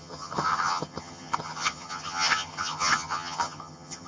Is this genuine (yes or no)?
no